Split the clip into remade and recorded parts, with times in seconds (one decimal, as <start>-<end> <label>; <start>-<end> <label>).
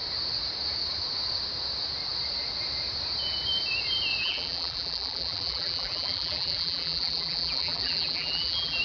0.0-4.2 recorded; 4.2-8.8 remade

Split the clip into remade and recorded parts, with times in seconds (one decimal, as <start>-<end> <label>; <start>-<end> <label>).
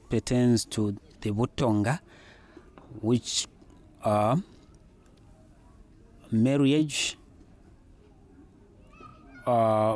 0.0-10.0 recorded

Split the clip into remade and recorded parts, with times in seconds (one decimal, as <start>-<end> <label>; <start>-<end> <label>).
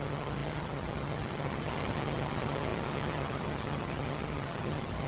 0.0-5.1 remade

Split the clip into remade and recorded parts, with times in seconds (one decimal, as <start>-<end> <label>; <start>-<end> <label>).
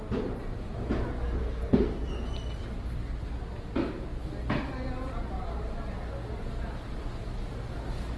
0.0-1.4 recorded; 1.4-2.1 remade; 2.1-8.2 recorded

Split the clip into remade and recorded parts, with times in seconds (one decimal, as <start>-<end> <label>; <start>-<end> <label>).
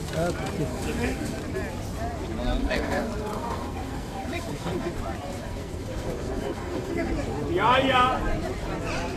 0.0-0.7 recorded; 0.7-1.4 remade; 1.4-2.6 recorded; 2.6-4.9 remade; 4.9-5.4 recorded; 5.4-7.1 remade; 7.1-9.2 recorded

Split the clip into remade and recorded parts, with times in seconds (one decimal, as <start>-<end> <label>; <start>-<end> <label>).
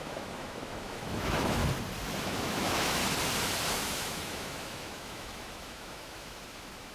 0.0-1.6 remade; 1.6-2.2 recorded; 2.2-3.0 remade; 3.0-3.7 recorded; 3.7-6.9 remade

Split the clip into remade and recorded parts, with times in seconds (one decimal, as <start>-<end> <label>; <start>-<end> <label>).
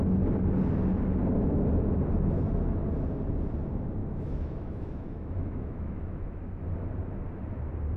0.0-4.0 recorded; 4.0-6.4 remade; 6.4-8.0 recorded